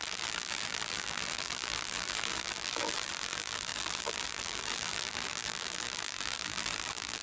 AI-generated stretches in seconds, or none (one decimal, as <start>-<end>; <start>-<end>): 0.0-7.2